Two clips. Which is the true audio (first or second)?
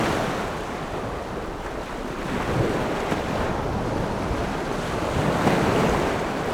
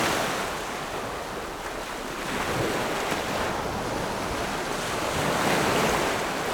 second